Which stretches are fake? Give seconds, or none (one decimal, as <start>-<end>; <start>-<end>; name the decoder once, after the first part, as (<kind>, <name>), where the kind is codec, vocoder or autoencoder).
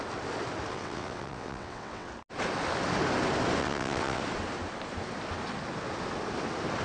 0.7-2.1 (vocoder, WaveNeXt); 3.6-4.2